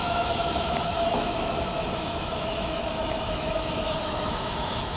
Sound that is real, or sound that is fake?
fake